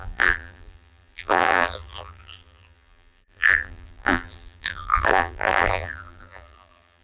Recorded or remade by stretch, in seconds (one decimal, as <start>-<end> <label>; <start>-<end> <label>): 0.0-7.0 remade